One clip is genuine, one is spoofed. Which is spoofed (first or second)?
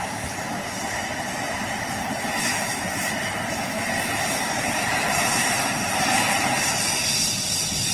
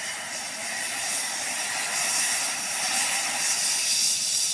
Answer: second